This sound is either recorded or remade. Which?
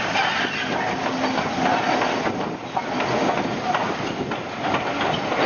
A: recorded